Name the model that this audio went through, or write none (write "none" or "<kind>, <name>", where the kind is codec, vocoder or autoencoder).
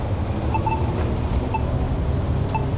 none